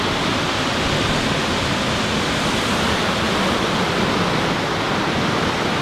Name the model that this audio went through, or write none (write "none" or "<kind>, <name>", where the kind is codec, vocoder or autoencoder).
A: none